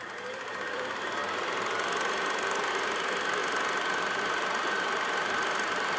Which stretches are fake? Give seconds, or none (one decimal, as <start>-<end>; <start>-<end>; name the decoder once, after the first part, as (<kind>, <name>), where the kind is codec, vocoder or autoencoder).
0.0-1.2 (vocoder, BigVGAN v2); 2.7-3.4; 4.2-6.0